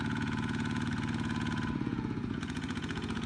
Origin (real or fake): fake